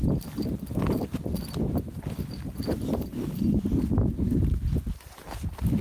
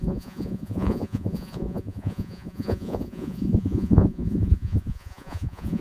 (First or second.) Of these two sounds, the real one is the first